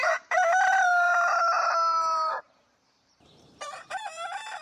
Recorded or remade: remade